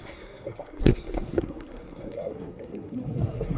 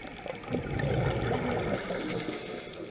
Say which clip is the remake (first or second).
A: first